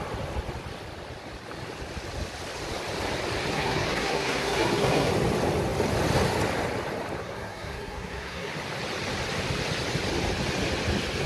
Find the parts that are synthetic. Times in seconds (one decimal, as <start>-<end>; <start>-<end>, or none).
3.5-5.1; 7.2-8.5